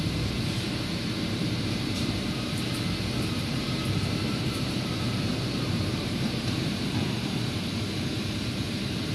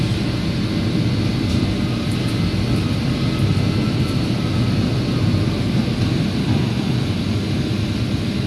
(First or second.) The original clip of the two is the second